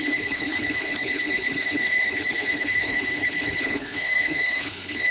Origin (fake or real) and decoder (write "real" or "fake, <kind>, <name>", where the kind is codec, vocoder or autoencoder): fake, codec, HILCodec